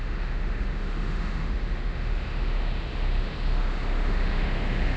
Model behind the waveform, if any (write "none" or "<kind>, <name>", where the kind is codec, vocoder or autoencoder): autoencoder, DAC-VAE